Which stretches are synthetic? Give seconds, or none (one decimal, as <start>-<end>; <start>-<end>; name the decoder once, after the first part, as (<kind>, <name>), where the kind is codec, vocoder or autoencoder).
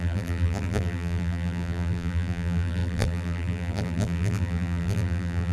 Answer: 0.0-5.5 (vocoder, BigVGAN v2)